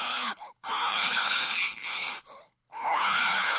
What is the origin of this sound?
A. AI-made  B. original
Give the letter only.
A